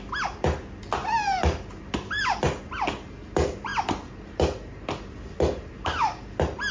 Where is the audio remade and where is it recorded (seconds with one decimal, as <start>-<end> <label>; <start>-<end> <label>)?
0.0-6.7 recorded